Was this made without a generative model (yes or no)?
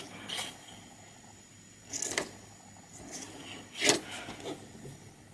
yes